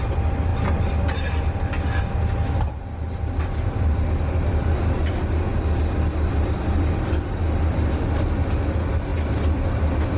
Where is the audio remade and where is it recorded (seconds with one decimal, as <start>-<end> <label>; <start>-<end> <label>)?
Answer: 0.0-10.2 recorded

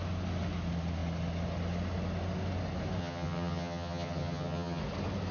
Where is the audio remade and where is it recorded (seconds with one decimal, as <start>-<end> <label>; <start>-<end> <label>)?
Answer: 0.0-3.0 recorded; 3.0-4.8 remade; 4.8-5.3 recorded

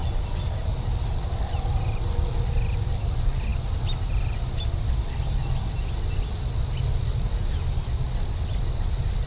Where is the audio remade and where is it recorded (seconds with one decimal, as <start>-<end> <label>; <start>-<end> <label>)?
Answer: 0.0-9.3 recorded

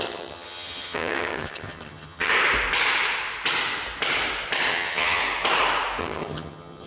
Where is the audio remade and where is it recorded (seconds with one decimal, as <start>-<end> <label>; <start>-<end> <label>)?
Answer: 0.0-2.3 remade; 2.3-4.7 recorded; 4.7-5.2 remade; 5.2-6.0 recorded; 6.0-6.9 remade